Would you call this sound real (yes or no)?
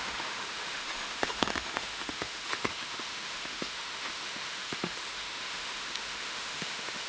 no